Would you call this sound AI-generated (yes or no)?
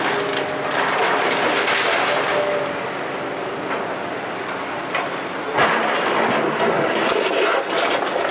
no